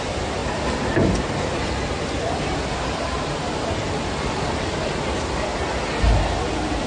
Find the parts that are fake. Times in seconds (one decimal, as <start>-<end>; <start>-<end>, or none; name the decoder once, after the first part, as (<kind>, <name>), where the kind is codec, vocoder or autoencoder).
0.4-4.5 (vocoder, BigVGAN v2)